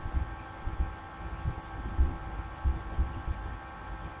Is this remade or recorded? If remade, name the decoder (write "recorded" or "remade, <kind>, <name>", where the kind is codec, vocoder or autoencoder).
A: recorded